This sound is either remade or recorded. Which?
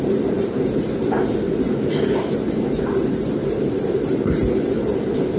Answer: remade